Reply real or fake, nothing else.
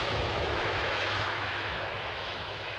fake